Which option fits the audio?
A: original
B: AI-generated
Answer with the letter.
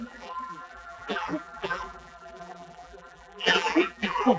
B